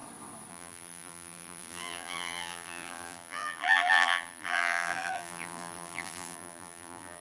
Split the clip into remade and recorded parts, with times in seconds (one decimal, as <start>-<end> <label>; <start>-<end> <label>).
0.0-0.5 recorded; 0.5-7.2 remade